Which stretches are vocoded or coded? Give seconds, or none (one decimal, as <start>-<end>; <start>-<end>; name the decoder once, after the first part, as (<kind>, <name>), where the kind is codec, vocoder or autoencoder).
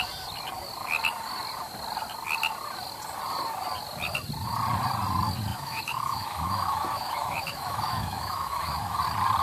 5.5-9.0 (autoencoder, DAC-VAE)